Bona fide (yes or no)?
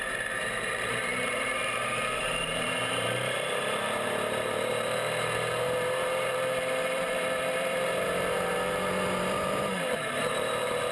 no